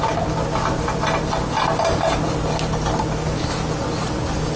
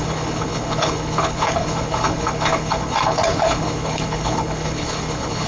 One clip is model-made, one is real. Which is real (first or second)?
first